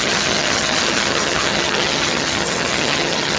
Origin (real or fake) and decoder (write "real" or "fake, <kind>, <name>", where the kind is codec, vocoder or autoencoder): fake, vocoder, HiFi-GAN